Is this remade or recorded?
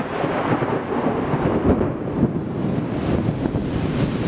recorded